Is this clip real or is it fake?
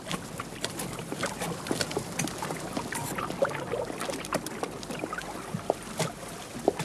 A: real